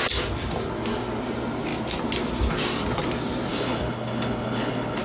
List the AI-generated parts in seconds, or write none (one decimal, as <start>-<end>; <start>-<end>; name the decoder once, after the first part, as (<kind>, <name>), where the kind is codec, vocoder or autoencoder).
3.5-5.0 (codec, HILCodec)